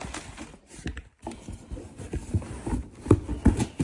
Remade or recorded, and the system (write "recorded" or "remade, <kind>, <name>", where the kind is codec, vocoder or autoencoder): recorded